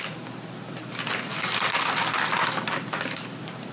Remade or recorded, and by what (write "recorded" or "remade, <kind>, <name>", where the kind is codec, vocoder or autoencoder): recorded